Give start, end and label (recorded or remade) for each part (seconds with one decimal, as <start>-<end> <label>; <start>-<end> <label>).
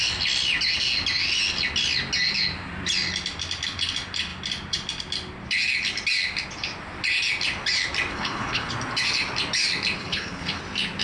0.0-8.1 recorded; 8.1-8.7 remade; 8.7-10.0 recorded; 10.0-10.6 remade; 10.6-11.0 recorded